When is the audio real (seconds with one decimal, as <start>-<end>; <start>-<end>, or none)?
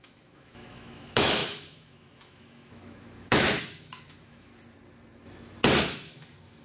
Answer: 4.5-5.8